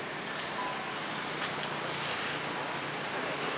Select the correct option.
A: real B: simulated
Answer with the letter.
A